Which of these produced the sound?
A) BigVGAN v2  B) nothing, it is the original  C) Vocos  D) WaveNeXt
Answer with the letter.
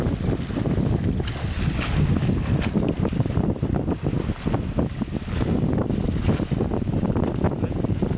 B